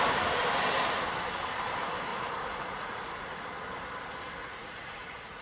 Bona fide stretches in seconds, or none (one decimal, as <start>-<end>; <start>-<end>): 0.0-2.1; 3.4-4.4